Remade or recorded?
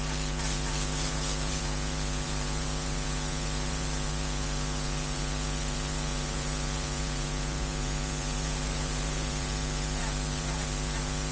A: remade